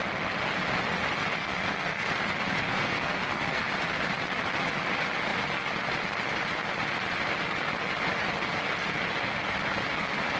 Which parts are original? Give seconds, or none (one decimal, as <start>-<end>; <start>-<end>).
0.0-1.4; 2.1-2.7; 3.7-10.4